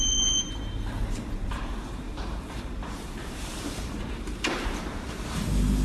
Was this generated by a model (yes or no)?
yes